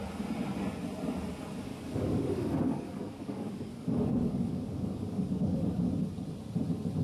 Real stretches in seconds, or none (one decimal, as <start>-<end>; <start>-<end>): 0.0-1.7; 5.9-7.0